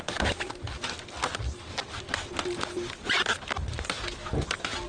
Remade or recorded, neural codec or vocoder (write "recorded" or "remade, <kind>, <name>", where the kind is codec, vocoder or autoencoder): recorded